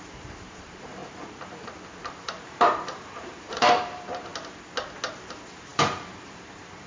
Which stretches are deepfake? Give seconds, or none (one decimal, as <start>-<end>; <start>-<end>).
0.0-1.0; 1.9-4.3; 5.1-6.9